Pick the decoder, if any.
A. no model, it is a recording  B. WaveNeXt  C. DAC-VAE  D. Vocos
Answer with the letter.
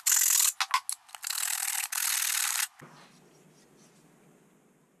A